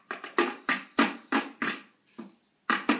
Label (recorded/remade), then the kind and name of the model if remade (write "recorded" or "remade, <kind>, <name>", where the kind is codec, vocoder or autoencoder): recorded